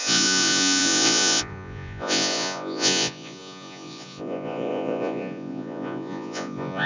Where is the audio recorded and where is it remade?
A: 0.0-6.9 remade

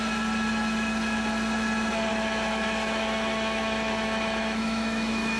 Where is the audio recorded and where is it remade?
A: 0.0-2.1 recorded; 2.1-5.4 remade

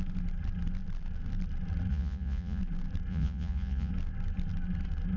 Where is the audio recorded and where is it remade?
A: 0.0-1.9 recorded; 1.9-2.6 remade; 2.6-3.1 recorded; 3.1-3.9 remade; 3.9-5.2 recorded

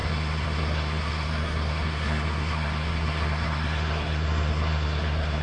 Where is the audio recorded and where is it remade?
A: 0.0-5.4 remade